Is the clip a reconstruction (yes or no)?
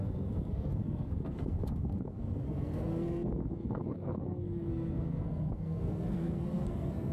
yes